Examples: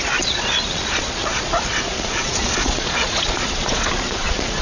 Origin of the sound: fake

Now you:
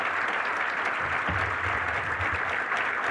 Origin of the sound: real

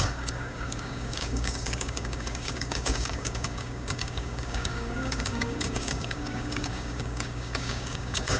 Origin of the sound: fake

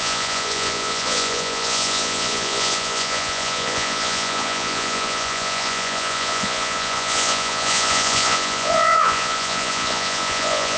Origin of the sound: fake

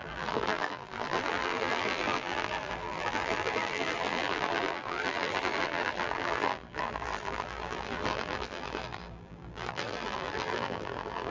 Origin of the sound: fake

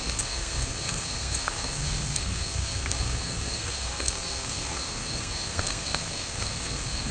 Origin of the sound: fake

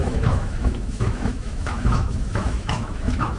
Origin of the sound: fake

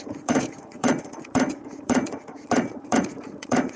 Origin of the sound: fake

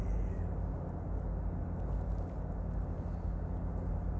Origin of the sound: real